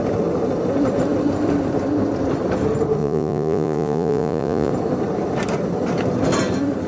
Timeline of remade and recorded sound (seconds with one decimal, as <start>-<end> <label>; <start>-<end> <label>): 0.0-3.0 recorded; 3.0-4.7 remade; 4.7-6.9 recorded

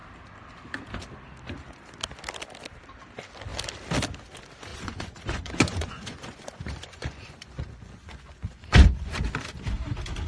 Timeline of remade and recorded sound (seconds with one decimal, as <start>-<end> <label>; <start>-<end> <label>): 0.0-4.7 recorded; 4.7-9.1 remade; 9.1-10.3 recorded

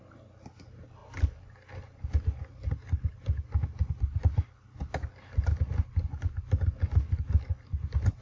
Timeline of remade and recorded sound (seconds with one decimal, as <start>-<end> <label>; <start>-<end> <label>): 0.0-8.2 recorded

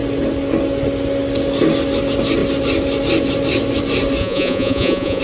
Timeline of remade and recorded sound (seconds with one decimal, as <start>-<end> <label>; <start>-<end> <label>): 0.0-4.2 recorded; 4.2-5.2 remade

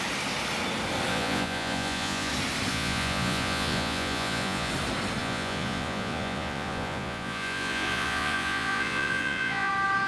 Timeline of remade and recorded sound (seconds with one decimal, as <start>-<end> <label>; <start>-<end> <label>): 0.0-1.1 recorded; 1.1-2.3 remade; 2.3-2.7 recorded; 2.7-4.7 remade; 4.7-5.2 recorded; 5.2-9.7 remade; 9.7-10.1 recorded

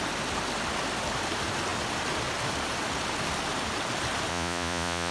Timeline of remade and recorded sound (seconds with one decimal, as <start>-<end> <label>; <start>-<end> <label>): 0.0-4.3 recorded; 4.3-5.1 remade